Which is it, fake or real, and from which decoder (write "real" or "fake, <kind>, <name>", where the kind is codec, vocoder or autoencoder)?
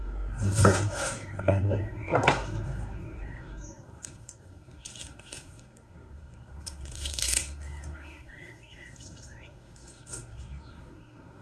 fake, codec, SNAC